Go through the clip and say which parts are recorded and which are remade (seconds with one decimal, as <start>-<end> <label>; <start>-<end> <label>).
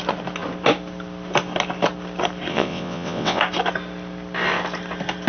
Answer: 0.0-2.5 recorded; 2.5-3.4 remade; 3.4-5.3 recorded